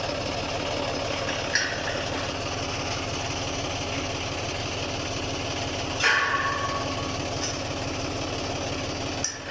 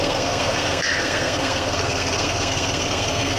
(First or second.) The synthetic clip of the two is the second